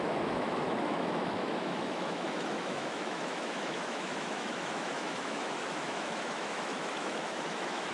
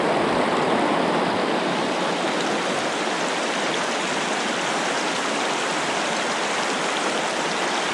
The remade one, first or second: first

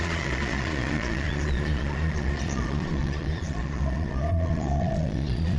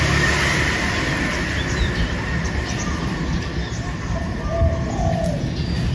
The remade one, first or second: first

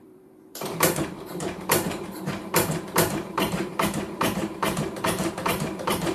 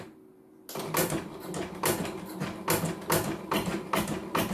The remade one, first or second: first